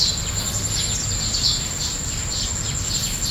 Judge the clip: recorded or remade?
recorded